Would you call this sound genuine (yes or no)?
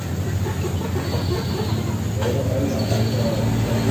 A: yes